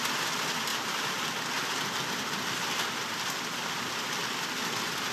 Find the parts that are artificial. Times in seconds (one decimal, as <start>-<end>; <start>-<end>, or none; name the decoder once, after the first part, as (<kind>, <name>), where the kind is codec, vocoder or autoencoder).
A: 0.7-3.8 (vocoder, BigVGAN v2)